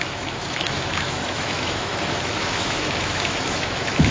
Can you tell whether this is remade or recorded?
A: remade